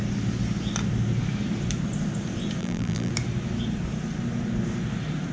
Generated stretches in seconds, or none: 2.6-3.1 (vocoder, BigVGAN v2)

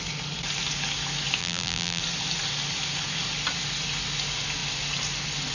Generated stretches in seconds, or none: 1.4-2.0 (vocoder, BigVGAN v2)

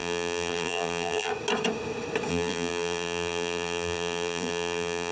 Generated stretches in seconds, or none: 0.0-1.3 (vocoder, BigVGAN v2); 2.3-5.1

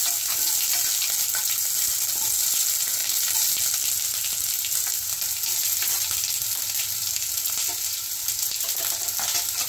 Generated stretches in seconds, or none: 3.0-3.6 (vocoder, BigVGAN v2)

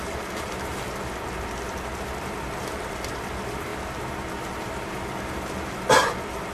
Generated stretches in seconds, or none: 0.0-0.7 (vocoder, BigVGAN v2); 2.2-3.7; 4.9-6.5

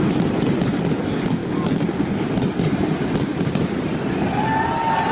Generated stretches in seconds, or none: none

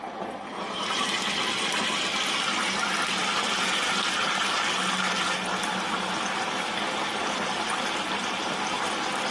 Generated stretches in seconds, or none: 0.5-1.0 (vocoder, BigVGAN v2)